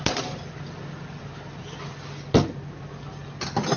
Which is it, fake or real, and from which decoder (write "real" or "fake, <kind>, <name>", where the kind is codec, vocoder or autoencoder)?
real